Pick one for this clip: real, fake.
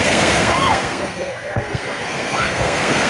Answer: fake